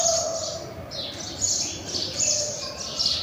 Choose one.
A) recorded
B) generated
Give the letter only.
A